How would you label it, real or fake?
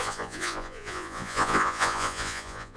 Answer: fake